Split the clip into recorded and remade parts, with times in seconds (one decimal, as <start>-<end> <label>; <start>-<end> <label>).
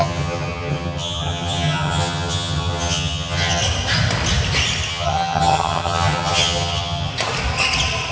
0.0-3.6 remade; 3.6-4.9 recorded; 4.9-7.1 remade; 7.1-8.1 recorded